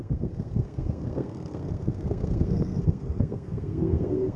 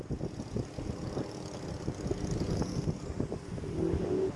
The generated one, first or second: first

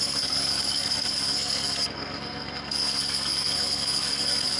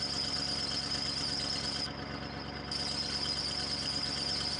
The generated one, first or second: first